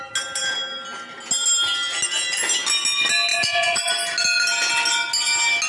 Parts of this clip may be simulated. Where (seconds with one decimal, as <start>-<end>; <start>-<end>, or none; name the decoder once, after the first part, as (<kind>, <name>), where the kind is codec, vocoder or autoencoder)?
3.3-3.9 (vocoder, Vocos)